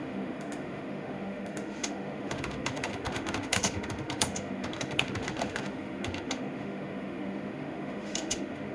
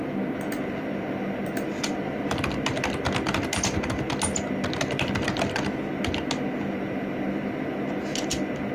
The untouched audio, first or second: second